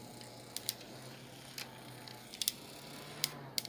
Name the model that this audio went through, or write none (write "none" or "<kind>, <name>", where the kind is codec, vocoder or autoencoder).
none